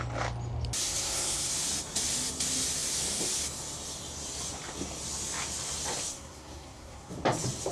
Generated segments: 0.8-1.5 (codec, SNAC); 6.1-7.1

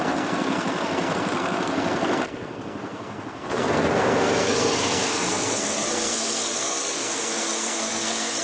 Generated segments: 0.0-8.4 (codec, SNAC)

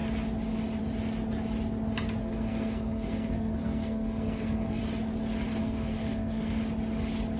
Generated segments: 2.2-4.8 (codec, SNAC); 5.6-6.6

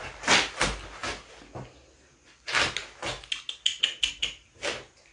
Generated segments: none